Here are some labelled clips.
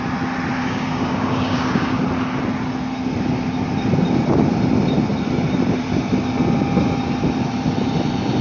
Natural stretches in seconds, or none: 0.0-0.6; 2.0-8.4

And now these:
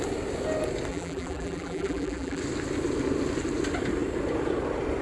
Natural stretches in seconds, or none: 0.0-0.9; 2.4-5.0

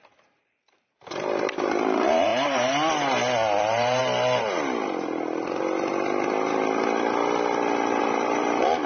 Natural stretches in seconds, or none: 2.3-3.6; 4.0-8.0

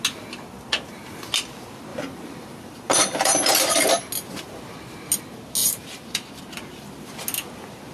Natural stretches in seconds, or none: 0.0-1.9; 3.9-5.6; 6.4-7.9

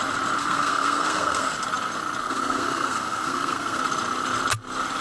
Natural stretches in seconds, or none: 0.0-0.4; 1.5-2.2; 3.8-5.0

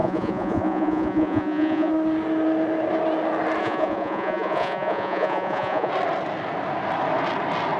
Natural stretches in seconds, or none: 1.9-3.6; 5.9-7.8

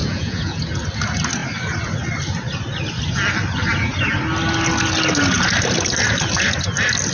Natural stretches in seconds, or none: 0.6-7.1

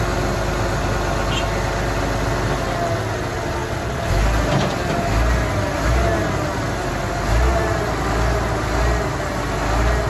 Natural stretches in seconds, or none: 0.0-10.1